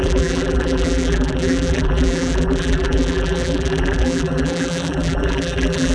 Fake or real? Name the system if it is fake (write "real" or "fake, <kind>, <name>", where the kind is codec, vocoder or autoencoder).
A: fake, vocoder, BigVGAN v2